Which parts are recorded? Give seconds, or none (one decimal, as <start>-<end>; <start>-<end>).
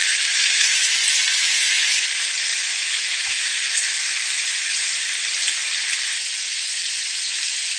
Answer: 0.9-1.4; 2.1-2.5; 4.7-6.7; 7.2-7.8